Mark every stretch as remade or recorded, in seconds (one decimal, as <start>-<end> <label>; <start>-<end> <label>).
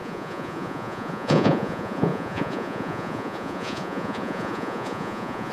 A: 0.0-5.5 remade